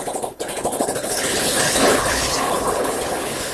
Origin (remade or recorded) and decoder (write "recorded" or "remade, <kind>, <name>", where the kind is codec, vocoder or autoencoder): remade, codec, HILCodec